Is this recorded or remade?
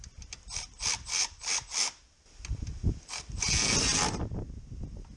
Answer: remade